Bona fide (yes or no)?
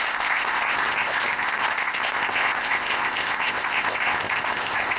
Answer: no